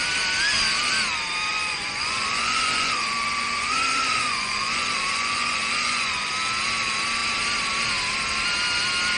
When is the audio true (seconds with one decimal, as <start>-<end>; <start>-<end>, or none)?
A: 0.0-1.5; 6.3-9.2